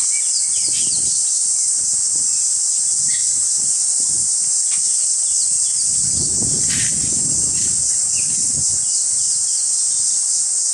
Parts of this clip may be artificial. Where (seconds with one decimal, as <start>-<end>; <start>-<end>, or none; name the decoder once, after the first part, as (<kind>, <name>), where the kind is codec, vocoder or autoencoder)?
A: none